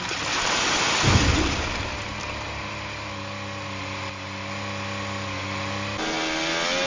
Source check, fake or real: real